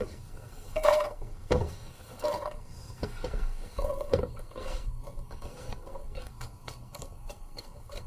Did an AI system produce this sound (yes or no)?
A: yes